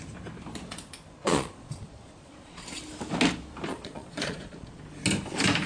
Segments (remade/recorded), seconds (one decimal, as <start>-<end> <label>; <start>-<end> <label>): 0.0-1.2 recorded; 1.2-2.8 remade; 2.8-3.7 recorded; 3.7-4.8 remade; 4.8-5.7 recorded